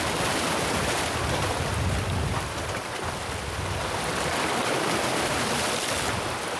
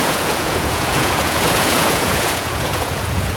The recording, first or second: first